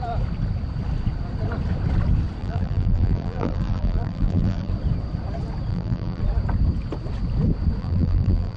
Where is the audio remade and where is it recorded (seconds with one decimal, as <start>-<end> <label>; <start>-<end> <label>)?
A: 0.0-2.4 recorded; 2.4-4.7 remade; 4.7-5.7 recorded; 5.7-6.2 remade; 6.2-7.8 recorded; 7.8-8.6 remade